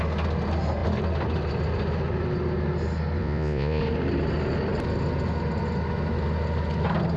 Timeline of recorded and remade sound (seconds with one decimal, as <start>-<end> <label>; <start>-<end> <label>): 0.0-3.2 recorded; 3.2-3.8 remade; 3.8-7.2 recorded